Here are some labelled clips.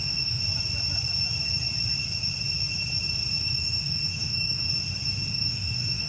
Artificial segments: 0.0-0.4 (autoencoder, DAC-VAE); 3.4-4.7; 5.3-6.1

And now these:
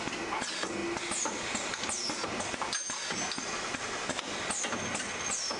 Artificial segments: none

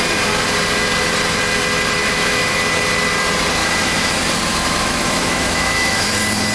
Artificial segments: 2.0-2.6 (autoencoder, DAC-VAE); 3.6-4.1; 4.5-6.1